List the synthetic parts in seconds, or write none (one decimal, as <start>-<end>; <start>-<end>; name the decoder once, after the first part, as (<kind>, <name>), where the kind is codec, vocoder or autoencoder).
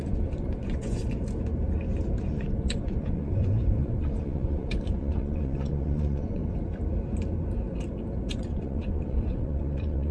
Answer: 0.0-1.0 (vocoder, Vocos); 2.3-6.4; 8.3-10.1